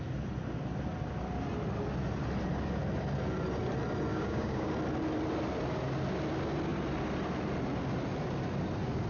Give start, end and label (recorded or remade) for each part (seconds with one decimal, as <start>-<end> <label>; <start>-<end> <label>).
0.0-4.1 recorded; 4.1-4.7 remade; 4.7-9.1 recorded